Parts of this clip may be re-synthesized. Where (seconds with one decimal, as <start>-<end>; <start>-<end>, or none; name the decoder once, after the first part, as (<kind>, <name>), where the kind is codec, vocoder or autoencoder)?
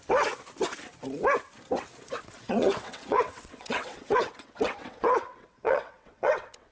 2.4-6.7 (vocoder, WaveNeXt)